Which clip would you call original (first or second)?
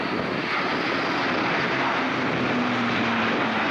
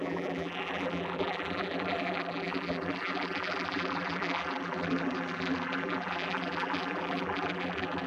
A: first